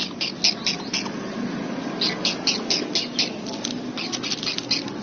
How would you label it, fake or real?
real